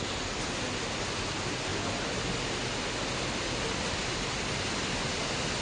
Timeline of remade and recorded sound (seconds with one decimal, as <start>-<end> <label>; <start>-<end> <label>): 0.0-1.7 remade; 1.7-3.8 recorded; 3.8-5.6 remade